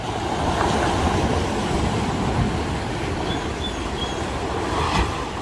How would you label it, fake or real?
real